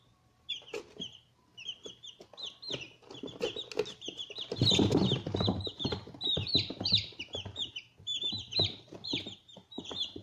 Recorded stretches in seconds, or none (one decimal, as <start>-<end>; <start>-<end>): 1.5-4.2